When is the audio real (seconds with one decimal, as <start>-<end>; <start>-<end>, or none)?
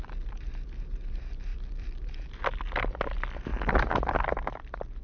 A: 0.0-1.5; 2.4-5.0